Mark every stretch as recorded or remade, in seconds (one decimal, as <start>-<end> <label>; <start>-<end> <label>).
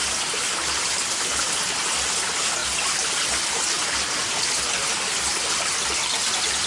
0.0-6.7 recorded